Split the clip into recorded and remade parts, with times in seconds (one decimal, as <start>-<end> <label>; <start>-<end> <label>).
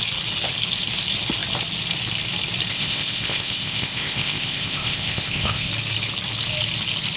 0.0-2.7 recorded; 2.7-5.7 remade; 5.7-7.2 recorded